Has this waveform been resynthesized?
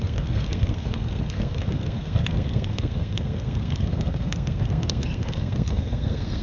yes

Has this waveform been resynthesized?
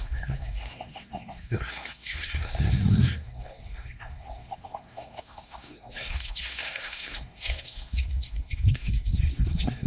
yes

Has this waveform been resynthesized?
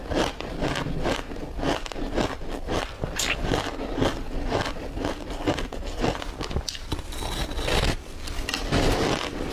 no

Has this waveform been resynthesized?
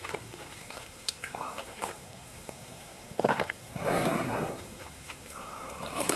yes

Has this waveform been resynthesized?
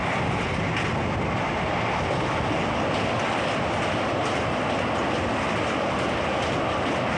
no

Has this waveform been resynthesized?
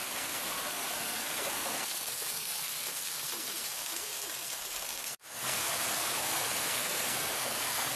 yes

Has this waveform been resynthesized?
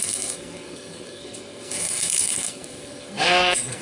yes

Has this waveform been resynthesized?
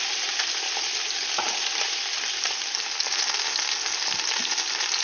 no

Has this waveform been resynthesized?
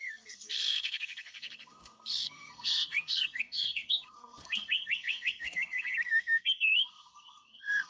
yes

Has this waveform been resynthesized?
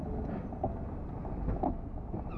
no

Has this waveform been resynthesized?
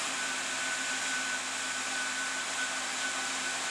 no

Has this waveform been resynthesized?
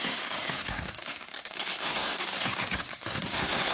yes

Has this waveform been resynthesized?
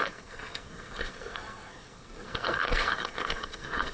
yes